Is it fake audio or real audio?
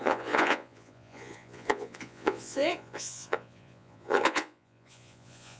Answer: fake